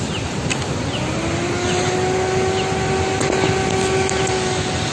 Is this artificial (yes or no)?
no